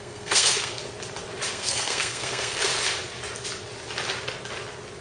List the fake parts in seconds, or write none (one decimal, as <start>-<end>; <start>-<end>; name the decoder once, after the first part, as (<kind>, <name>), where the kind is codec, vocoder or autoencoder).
0.0-0.8 (codec, SNAC); 1.5-2.7